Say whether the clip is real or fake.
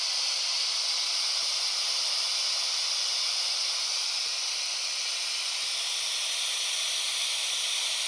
real